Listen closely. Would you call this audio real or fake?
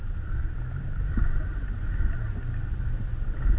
real